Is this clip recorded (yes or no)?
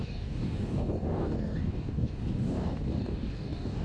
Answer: no